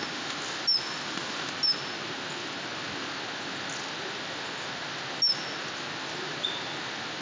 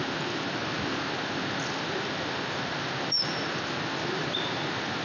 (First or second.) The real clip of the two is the first